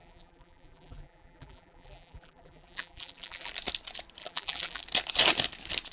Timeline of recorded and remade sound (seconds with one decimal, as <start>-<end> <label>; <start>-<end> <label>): 0.0-3.5 remade; 3.5-4.2 recorded; 4.2-4.8 remade; 4.8-5.9 recorded